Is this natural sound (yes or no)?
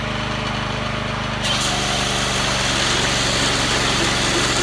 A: yes